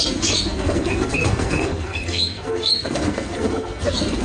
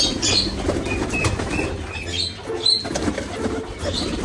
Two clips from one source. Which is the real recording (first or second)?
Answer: second